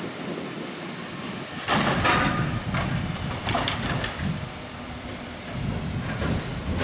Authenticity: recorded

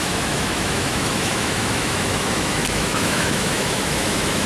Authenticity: remade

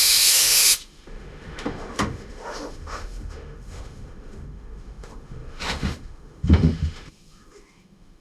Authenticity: remade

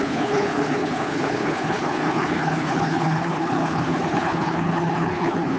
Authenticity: remade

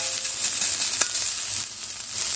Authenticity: recorded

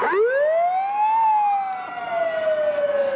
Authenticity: recorded